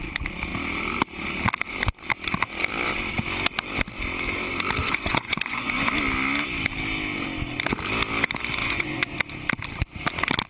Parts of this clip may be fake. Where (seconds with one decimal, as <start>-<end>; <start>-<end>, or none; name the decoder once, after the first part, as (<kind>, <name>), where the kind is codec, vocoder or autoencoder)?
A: 4.8-5.9 (vocoder, Vocos); 8.6-9.2